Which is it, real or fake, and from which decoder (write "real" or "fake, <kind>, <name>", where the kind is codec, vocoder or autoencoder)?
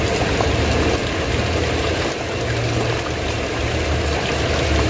real